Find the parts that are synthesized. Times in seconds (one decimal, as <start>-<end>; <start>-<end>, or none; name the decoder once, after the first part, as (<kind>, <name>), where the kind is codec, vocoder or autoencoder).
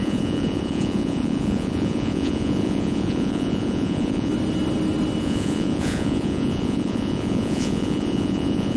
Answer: 0.0-4.3 (vocoder, Vocos); 5.2-8.8